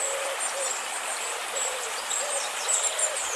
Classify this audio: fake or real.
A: real